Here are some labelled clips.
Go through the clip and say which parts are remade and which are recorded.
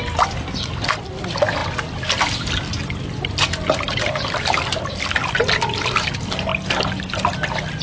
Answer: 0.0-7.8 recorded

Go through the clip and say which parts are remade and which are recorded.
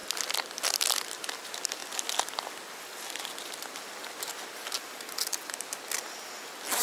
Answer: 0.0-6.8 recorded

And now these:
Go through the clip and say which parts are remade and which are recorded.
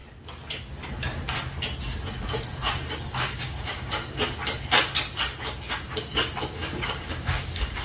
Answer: 0.0-3.0 recorded; 3.0-4.0 remade; 4.0-6.4 recorded; 6.4-7.8 remade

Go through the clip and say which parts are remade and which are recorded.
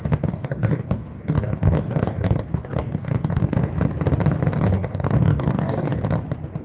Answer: 0.0-3.7 remade; 3.7-4.6 recorded; 4.6-6.0 remade; 6.0-6.6 recorded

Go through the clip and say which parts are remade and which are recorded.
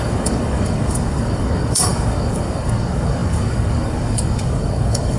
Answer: 0.0-5.2 remade